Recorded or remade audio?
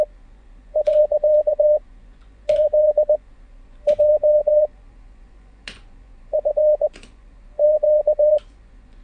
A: remade